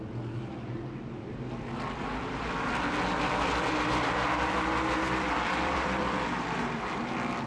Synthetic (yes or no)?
yes